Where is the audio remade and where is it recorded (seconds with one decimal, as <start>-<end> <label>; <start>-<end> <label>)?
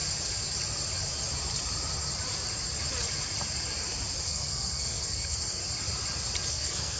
0.0-4.2 recorded; 4.2-5.6 remade; 5.6-6.5 recorded; 6.5-7.0 remade